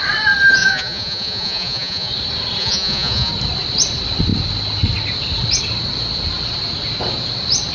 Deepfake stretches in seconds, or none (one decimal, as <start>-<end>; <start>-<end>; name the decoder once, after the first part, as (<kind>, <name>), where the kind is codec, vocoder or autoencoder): 0.6-2.1 (vocoder, Vocos); 2.6-3.3